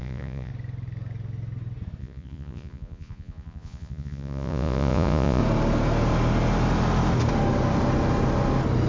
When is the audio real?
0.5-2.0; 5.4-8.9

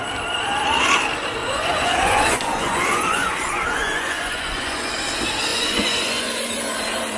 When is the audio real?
0.0-1.4; 4.9-5.5; 6.5-7.2

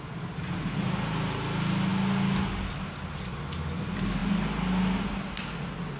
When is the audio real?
0.0-6.0

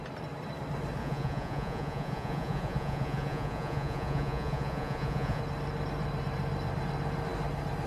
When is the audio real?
0.0-1.0; 5.4-7.9

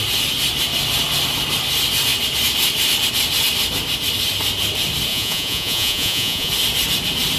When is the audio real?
0.0-5.1; 6.5-7.4

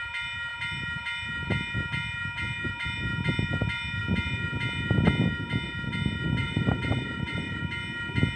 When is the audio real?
0.0-6.4; 7.6-8.4